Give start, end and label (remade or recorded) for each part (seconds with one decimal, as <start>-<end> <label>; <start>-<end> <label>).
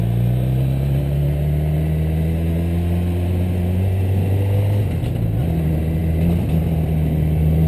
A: 0.0-7.7 recorded